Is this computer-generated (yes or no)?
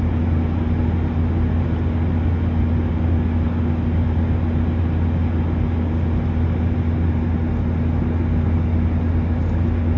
no